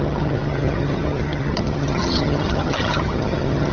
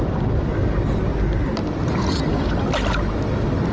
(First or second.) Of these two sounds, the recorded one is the second